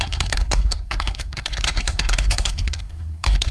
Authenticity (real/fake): fake